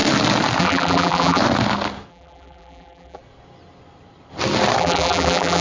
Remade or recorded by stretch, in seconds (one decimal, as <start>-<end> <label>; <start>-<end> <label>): 0.0-0.6 recorded; 0.6-1.4 remade; 1.4-2.1 recorded; 2.1-3.2 remade; 3.2-4.8 recorded; 4.8-5.6 remade